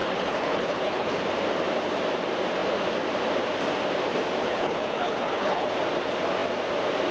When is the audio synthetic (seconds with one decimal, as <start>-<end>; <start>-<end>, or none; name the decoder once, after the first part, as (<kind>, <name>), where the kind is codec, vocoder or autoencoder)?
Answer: 0.0-1.2 (codec, HILCodec); 4.4-5.7